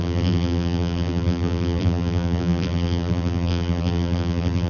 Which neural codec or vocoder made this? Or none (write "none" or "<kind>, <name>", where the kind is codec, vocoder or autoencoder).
vocoder, BigVGAN v2